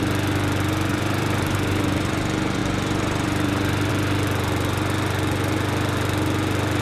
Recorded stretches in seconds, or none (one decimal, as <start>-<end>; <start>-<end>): 0.0-0.9; 2.2-2.6; 3.9-6.8